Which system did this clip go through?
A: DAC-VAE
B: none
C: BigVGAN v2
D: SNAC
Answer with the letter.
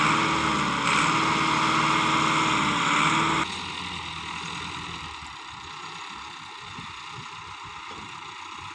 B